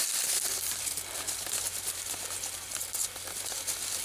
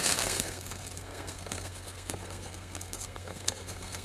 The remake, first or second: second